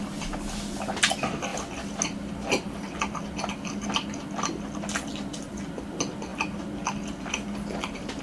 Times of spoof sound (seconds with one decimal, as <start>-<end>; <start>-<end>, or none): none